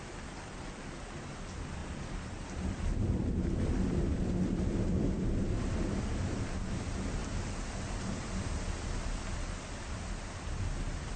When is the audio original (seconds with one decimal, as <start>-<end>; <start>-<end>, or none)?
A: 0.0-1.8; 6.6-11.2